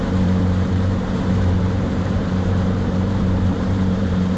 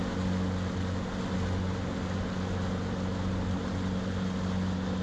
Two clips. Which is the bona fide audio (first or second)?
second